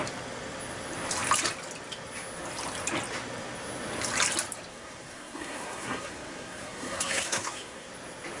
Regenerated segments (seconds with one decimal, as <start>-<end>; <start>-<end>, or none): 4.7-7.9